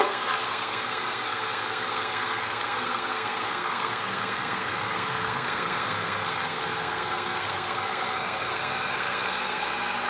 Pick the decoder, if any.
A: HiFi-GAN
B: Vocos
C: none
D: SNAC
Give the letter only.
D